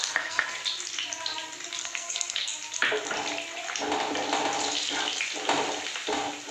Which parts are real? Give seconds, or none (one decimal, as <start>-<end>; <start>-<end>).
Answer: 0.6-1.8; 2.5-6.5